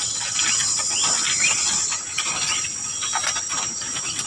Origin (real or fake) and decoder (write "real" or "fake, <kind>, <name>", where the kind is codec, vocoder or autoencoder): real